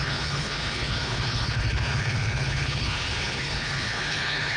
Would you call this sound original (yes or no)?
no